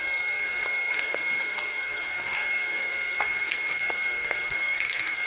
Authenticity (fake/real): fake